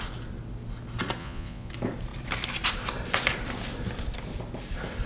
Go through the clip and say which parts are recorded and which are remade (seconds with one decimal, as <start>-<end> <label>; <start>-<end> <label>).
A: 0.0-1.2 recorded; 1.2-1.7 remade; 1.7-5.1 recorded